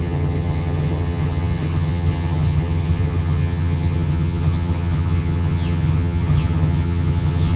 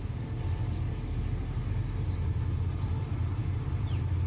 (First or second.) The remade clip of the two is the first